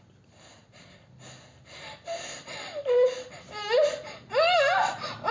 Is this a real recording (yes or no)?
yes